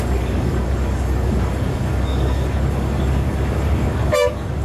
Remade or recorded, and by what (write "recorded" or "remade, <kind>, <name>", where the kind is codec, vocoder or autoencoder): remade, codec, DAC